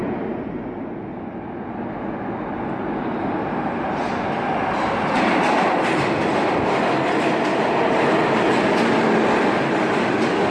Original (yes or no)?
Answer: yes